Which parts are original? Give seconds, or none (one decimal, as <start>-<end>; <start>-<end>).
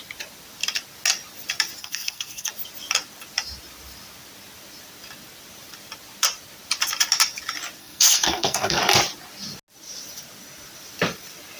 0.0-1.8; 2.5-7.8; 8.8-11.6